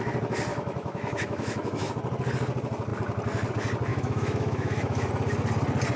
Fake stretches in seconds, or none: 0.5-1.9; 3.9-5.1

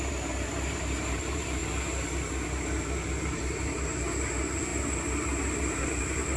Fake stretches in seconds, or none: 0.0-1.6; 3.2-6.4

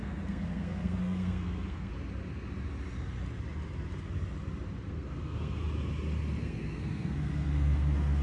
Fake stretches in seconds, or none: 0.0-1.9; 4.9-5.6; 6.4-8.2

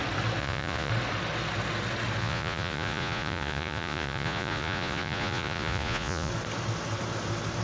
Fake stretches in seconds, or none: 0.4-0.9; 2.2-6.3

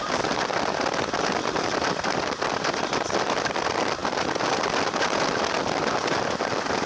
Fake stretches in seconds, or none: 0.0-6.9